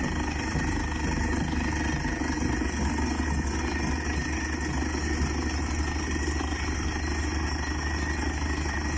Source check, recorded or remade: recorded